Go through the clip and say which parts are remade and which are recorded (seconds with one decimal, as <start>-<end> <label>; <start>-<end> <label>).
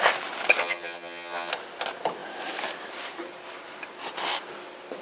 0.0-0.6 recorded; 0.6-1.5 remade; 1.5-5.0 recorded